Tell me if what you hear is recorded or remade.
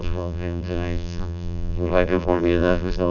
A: remade